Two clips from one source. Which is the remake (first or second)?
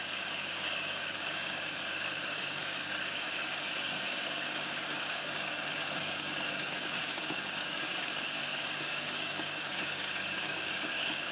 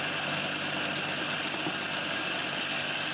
first